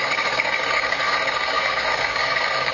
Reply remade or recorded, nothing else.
remade